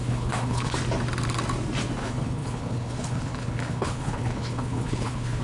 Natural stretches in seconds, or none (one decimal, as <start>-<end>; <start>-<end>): 0.7-2.0

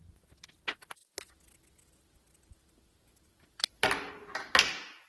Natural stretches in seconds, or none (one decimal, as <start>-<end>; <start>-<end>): 0.0-5.1

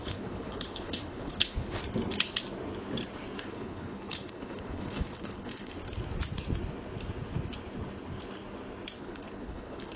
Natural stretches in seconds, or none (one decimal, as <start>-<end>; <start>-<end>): 1.8-3.5; 5.8-9.0

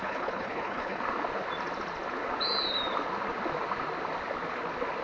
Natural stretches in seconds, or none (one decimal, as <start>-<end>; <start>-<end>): 1.0-5.0

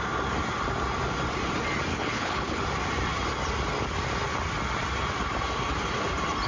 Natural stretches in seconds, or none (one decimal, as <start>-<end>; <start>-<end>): 0.0-1.9; 2.6-6.5